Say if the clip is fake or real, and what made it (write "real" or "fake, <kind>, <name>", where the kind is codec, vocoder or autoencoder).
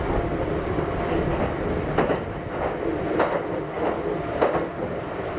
real